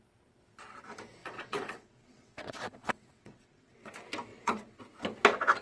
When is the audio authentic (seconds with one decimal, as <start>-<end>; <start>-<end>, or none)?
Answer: 0.0-1.2; 3.9-4.3; 4.8-5.6